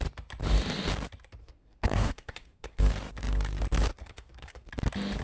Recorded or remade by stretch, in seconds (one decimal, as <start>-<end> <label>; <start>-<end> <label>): 0.0-1.4 recorded; 1.4-2.8 remade; 2.8-3.9 recorded; 3.9-4.7 remade; 4.7-5.2 recorded